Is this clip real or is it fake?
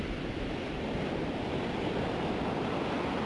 fake